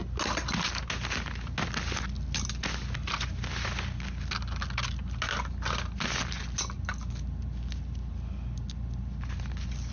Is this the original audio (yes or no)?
yes